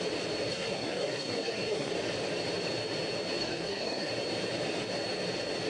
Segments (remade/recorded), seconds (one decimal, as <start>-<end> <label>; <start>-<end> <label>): 0.0-0.5 recorded; 0.5-1.9 remade; 1.9-3.4 recorded; 3.4-4.1 remade; 4.1-5.7 recorded